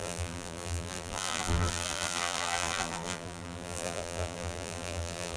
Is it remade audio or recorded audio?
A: remade